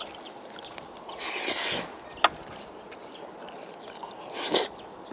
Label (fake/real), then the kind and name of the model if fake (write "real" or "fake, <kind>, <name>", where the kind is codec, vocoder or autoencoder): real